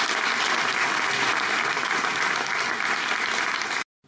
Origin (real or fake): real